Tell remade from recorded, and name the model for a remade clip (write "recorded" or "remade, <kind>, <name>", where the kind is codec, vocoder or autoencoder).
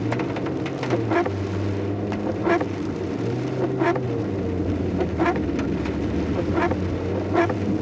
recorded